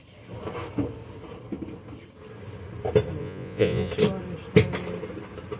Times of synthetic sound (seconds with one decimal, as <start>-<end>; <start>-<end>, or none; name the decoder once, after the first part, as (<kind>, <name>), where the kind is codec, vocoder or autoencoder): 3.2-3.9 (vocoder, Vocos)